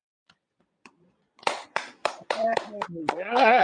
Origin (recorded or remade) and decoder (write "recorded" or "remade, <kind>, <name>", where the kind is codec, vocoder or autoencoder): remade, vocoder, Vocos